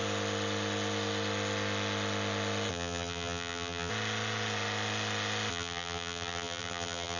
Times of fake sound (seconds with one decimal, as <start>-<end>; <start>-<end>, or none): 2.7-3.9; 5.5-7.2